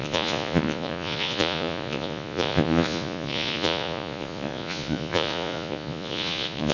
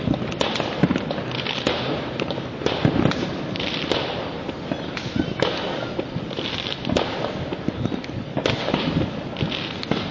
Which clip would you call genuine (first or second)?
second